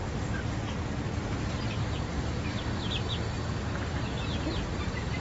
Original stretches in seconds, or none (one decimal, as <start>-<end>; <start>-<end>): 0.0-1.6